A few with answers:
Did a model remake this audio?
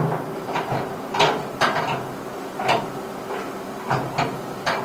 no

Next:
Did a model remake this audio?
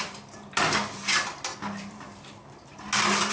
no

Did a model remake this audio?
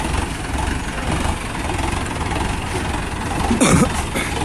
no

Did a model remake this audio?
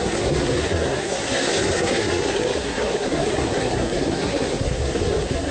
yes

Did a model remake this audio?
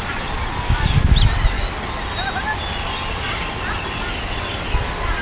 no